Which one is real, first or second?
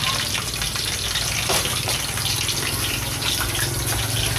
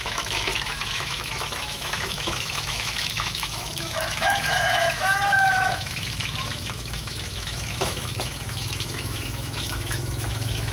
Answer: first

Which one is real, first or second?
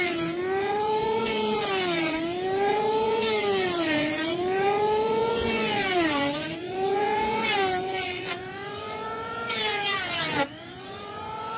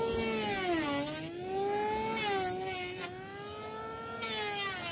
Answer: second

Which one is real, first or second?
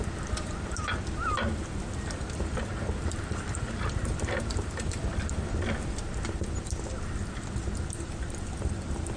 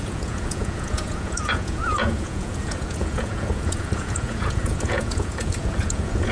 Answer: first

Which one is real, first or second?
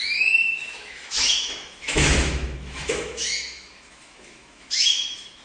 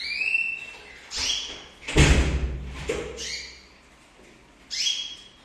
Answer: second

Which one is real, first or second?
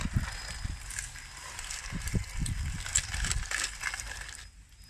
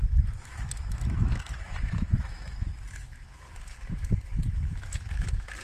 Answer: first